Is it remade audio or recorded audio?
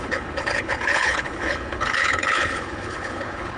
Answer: remade